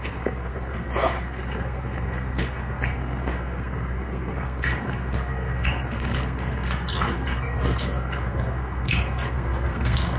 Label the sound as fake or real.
fake